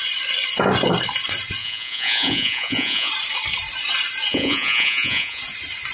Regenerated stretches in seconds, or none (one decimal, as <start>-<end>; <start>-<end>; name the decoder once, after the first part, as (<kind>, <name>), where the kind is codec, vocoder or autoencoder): 1.6-3.1 (vocoder, Vocos); 4.3-5.4